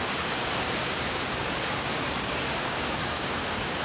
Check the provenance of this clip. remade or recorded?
remade